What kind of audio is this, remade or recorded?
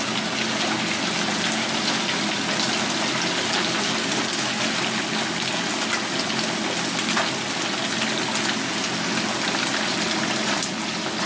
recorded